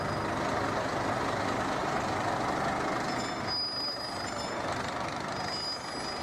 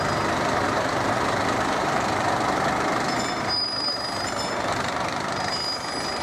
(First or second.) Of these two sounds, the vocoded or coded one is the second